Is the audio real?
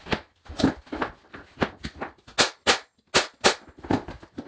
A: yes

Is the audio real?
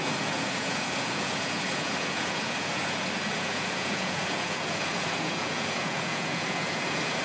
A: no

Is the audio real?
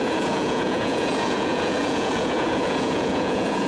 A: no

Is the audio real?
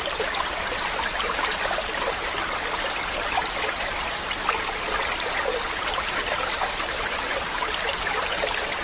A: yes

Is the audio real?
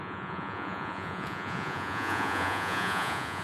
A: no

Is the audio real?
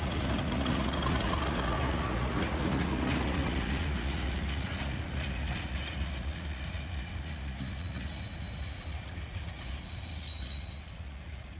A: no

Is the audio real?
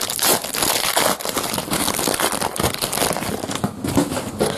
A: yes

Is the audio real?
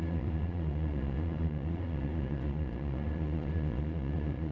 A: no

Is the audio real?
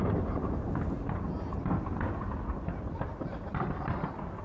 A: yes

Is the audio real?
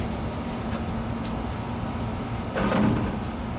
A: yes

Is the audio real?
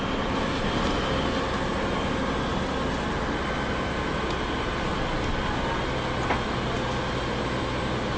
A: yes